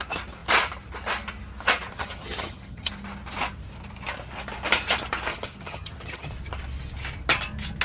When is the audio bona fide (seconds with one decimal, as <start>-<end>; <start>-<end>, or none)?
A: 0.0-1.9; 2.9-5.3; 6.3-7.8